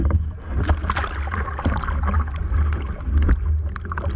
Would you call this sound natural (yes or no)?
yes